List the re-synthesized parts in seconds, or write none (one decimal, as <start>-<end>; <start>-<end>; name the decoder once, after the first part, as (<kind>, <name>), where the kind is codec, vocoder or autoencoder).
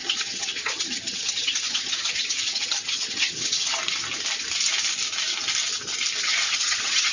0.0-3.8 (vocoder, HiFi-GAN); 6.2-7.1